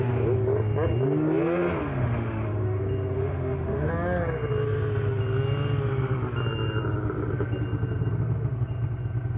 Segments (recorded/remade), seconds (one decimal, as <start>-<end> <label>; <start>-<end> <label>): 0.0-1.8 recorded; 1.8-2.8 remade; 2.8-3.2 recorded; 3.2-3.9 remade; 3.9-9.4 recorded